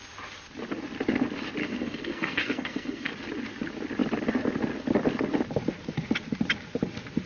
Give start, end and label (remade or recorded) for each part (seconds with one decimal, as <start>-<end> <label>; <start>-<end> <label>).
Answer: 0.0-1.6 recorded; 1.6-3.1 remade; 3.1-7.3 recorded